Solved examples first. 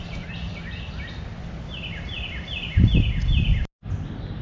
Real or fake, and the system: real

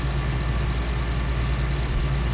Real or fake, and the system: real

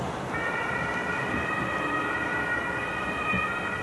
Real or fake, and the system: real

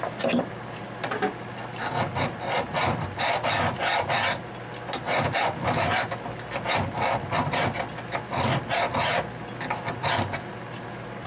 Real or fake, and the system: real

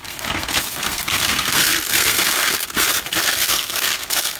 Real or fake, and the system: fake, codec, SNAC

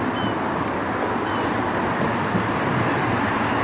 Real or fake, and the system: real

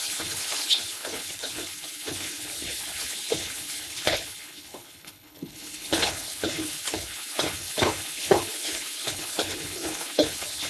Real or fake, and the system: fake, codec, HILCodec